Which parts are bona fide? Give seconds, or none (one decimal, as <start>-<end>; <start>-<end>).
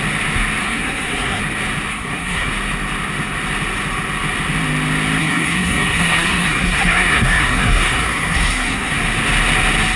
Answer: 0.0-0.6; 1.4-1.9; 2.5-5.2; 8.9-10.0